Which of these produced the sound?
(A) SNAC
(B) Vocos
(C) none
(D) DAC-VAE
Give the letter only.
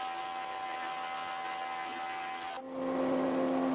C